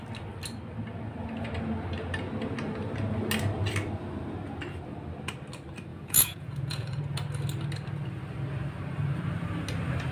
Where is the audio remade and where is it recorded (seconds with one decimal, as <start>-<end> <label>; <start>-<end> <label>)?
0.0-5.9 recorded; 5.9-7.0 remade; 7.0-10.1 recorded